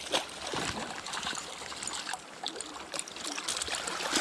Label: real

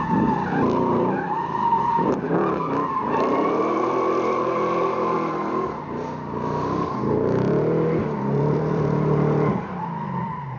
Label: fake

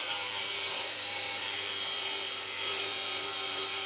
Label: fake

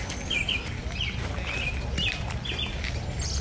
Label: real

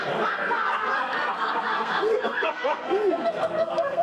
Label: fake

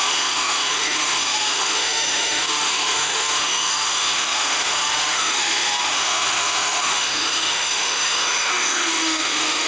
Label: fake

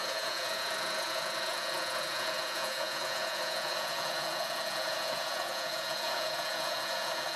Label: fake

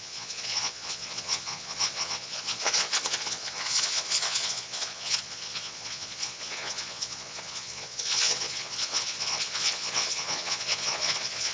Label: fake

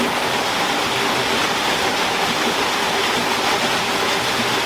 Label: real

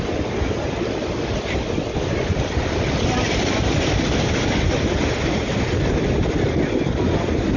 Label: real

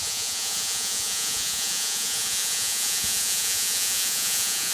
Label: fake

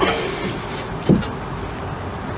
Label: real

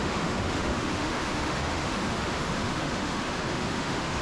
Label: fake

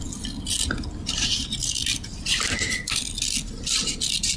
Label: real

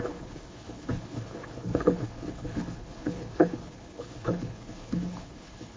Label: fake